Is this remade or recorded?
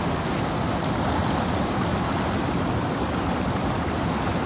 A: recorded